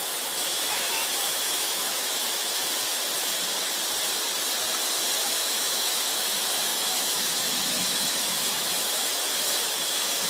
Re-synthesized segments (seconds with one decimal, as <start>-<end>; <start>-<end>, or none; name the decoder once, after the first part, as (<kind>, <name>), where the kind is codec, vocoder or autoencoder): 0.0-2.6 (autoencoder, DAC-VAE); 5.1-10.3